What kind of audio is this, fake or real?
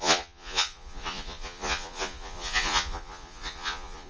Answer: fake